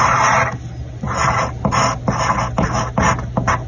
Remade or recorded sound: recorded